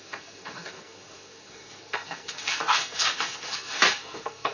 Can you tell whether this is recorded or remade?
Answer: remade